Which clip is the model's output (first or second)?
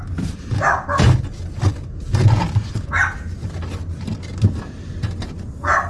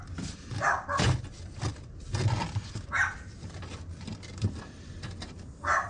second